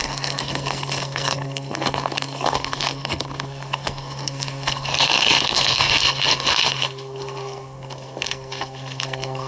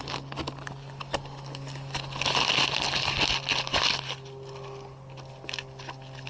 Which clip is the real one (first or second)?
second